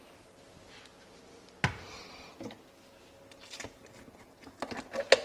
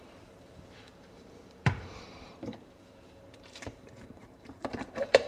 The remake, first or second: second